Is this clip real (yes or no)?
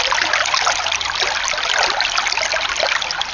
yes